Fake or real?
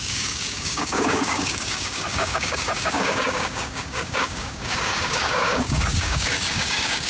fake